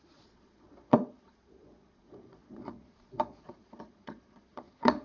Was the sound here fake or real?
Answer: fake